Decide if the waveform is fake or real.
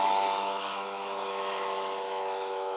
fake